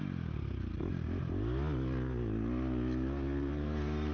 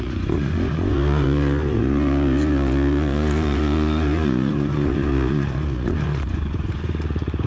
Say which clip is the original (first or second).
first